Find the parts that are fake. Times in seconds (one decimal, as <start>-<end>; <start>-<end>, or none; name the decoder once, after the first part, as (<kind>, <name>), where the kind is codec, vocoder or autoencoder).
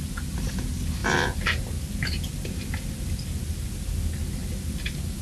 none